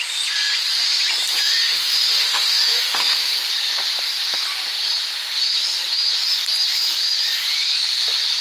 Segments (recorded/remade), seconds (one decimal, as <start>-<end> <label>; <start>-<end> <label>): 0.0-1.6 recorded; 1.6-3.3 remade; 3.3-8.4 recorded